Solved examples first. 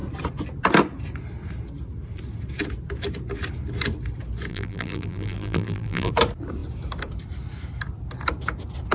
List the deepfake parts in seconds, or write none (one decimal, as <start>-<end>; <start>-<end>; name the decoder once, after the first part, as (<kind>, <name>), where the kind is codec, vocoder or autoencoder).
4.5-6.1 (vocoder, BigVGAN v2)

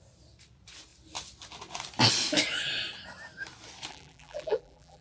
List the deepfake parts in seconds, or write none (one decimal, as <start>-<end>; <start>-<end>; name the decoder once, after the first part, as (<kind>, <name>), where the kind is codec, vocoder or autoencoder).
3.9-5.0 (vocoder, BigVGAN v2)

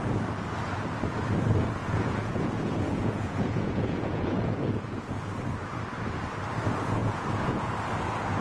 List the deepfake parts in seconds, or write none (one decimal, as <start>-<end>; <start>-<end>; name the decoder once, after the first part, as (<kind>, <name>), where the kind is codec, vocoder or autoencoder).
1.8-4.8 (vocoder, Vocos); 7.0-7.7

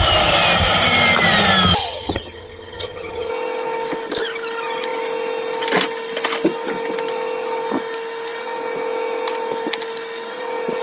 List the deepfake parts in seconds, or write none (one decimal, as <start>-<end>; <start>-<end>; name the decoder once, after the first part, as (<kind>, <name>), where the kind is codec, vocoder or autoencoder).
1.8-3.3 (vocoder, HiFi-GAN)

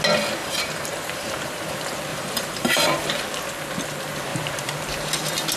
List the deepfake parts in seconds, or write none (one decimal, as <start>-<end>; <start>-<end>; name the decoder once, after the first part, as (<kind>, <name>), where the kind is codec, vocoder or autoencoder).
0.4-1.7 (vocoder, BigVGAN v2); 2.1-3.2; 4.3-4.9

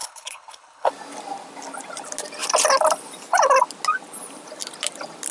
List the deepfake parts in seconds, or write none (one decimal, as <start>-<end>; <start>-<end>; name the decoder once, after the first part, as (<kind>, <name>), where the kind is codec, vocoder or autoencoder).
0.0-0.9 (codec, HILCodec)

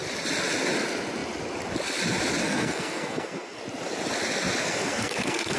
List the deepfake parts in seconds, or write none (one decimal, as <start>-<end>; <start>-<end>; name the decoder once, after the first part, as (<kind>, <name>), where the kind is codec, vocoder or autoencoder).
2.4-3.6 (codec, SNAC); 4.6-5.6

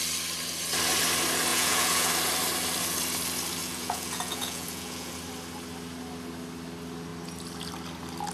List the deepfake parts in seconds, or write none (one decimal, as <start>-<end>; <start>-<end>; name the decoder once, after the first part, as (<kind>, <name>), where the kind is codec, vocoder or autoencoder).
1.5-2.1 (vocoder, Vocos); 3.6-5.1